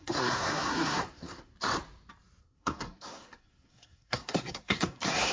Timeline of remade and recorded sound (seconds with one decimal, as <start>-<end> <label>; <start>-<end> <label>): 0.0-1.5 remade; 1.5-2.4 recorded; 2.4-5.3 remade